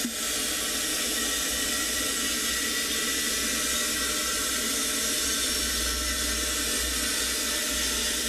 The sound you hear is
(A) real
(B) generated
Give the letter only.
A